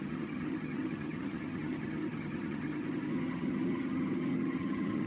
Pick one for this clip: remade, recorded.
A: remade